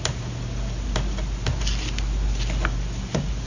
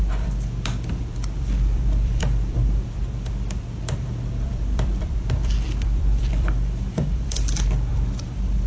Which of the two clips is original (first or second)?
first